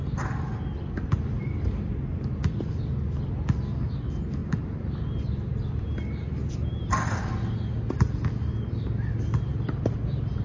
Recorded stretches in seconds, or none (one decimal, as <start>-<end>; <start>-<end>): 0.0-10.4